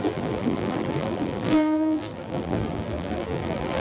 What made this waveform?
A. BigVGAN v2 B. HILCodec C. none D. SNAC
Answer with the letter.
A